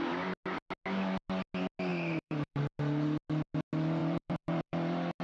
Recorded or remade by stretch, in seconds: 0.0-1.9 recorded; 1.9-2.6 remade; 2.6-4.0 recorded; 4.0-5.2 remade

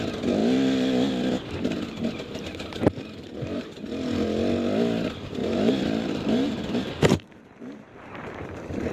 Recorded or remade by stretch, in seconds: 0.0-5.4 recorded; 5.4-8.5 remade; 8.5-8.9 recorded

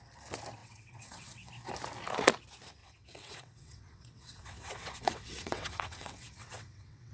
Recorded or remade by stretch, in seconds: 0.0-0.6 recorded; 0.6-1.5 remade; 1.5-2.8 recorded; 2.8-7.1 remade

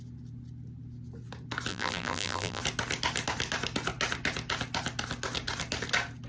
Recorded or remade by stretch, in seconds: 0.0-1.7 recorded; 1.7-2.6 remade; 2.6-6.3 recorded

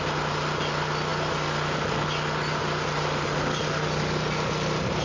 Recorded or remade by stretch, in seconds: 0.0-5.0 recorded

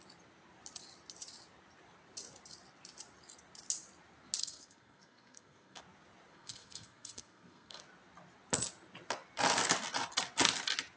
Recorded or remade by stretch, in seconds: 0.0-4.4 recorded; 4.4-5.8 remade; 5.8-6.3 recorded; 6.3-7.8 remade; 7.8-11.0 recorded

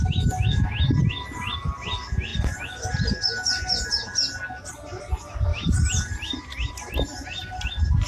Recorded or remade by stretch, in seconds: 0.0-5.5 recorded; 5.5-6.7 remade; 6.7-8.1 recorded

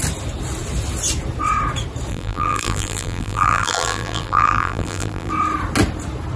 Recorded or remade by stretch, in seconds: 0.0-2.1 recorded; 2.1-5.3 remade; 5.3-6.4 recorded